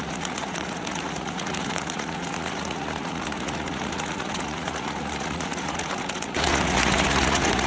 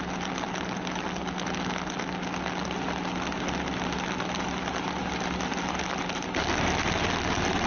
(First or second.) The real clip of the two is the second